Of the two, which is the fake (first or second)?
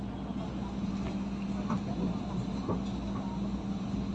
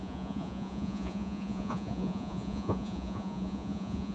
second